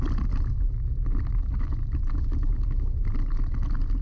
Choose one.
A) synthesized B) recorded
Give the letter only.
B